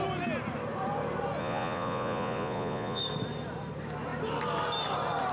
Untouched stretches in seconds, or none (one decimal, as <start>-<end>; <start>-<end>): 0.0-1.4; 3.0-5.3